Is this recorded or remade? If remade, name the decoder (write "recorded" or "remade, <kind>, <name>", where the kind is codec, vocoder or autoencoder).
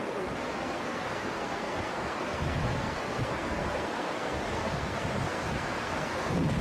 remade, codec, SNAC